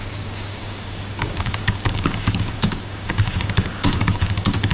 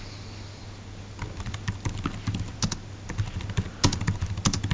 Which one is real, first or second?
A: second